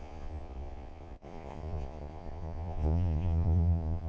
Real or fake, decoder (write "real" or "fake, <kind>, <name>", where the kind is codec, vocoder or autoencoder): fake, vocoder, Vocos